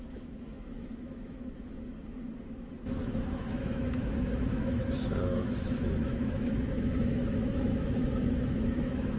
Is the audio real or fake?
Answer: fake